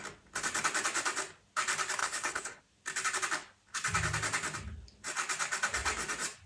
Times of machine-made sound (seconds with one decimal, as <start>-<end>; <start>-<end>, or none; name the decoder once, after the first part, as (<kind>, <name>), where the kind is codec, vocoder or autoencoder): 2.0-2.6 (codec, HILCodec)